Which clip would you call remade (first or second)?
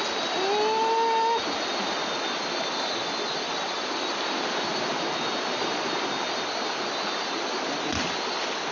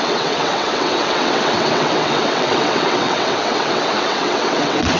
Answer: second